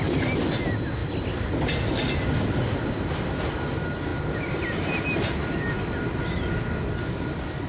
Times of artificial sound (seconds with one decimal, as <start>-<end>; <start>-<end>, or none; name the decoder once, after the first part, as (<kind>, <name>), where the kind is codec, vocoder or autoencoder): none